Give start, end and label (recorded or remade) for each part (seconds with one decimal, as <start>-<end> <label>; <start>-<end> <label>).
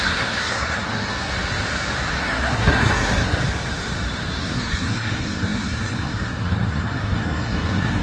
0.0-1.3 remade; 1.3-2.2 recorded; 2.2-3.4 remade; 3.4-4.4 recorded; 4.4-8.0 remade